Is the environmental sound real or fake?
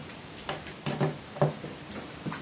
real